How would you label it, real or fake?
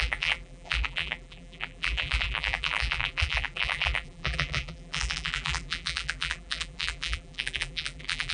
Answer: fake